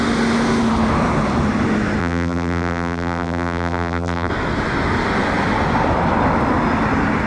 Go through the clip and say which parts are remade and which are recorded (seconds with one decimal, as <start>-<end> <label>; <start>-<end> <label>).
0.0-2.0 recorded; 2.0-4.3 remade; 4.3-7.3 recorded